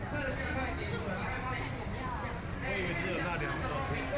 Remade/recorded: recorded